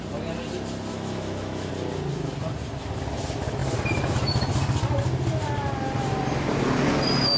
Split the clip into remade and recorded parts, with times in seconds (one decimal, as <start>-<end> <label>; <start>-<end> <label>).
0.0-0.9 recorded; 0.9-1.7 remade; 1.7-7.4 recorded